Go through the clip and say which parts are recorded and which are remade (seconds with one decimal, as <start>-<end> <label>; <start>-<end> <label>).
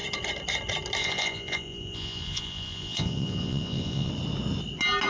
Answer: 0.0-1.0 recorded; 1.0-4.1 remade; 4.1-5.1 recorded